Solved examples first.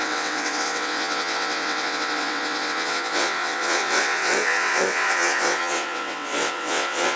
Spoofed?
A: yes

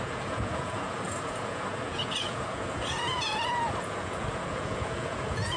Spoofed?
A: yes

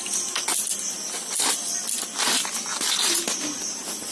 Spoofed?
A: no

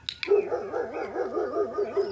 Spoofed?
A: no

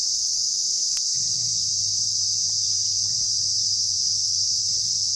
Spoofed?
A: no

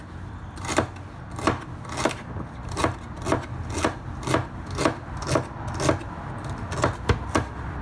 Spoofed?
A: no